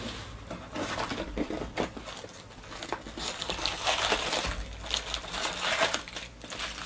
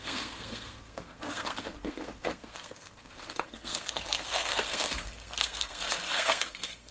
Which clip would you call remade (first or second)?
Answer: second